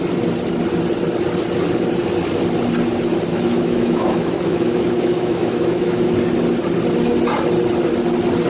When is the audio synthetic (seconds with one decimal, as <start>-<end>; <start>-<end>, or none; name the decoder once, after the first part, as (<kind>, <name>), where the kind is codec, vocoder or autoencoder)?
3.3-6.2 (autoencoder, DAC-VAE)